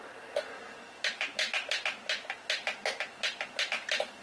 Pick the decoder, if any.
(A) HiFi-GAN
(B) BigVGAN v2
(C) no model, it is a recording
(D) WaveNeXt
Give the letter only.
C